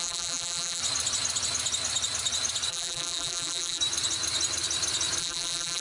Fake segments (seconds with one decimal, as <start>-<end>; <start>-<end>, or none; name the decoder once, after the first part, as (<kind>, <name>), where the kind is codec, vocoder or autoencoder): 0.0-0.8 (vocoder, BigVGAN v2); 2.7-3.8; 5.2-5.8